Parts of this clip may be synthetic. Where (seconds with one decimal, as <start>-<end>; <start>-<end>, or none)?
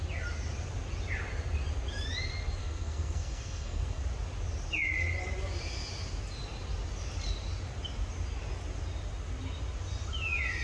2.6-4.0